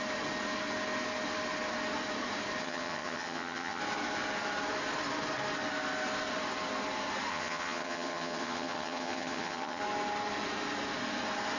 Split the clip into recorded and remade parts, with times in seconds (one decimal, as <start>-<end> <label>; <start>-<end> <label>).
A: 0.0-2.6 recorded; 2.6-3.8 remade; 3.8-7.3 recorded; 7.3-9.8 remade; 9.8-11.6 recorded